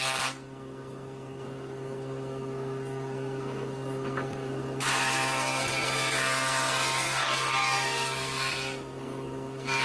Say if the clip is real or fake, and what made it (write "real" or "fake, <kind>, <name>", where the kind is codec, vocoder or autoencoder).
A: fake, codec, SNAC